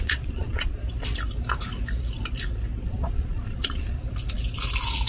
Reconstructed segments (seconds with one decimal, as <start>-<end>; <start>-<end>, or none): 0.0-0.8; 2.8-4.0